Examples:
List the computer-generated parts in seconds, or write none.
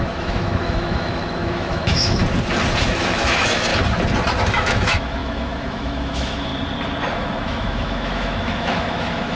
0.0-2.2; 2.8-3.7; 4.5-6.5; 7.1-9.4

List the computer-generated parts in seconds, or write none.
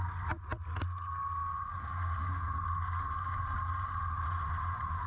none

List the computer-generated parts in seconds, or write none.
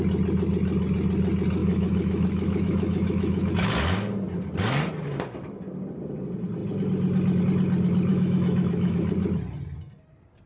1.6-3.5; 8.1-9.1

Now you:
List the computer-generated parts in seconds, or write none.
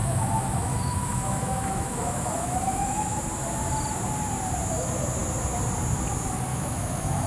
0.0-3.2; 6.5-7.3